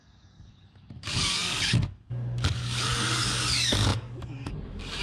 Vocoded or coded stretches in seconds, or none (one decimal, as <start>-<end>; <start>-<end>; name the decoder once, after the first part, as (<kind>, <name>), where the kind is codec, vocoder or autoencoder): 0.0-5.0 (codec, DAC)